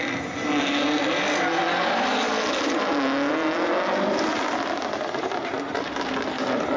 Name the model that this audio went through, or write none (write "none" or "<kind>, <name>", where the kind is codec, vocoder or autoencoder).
none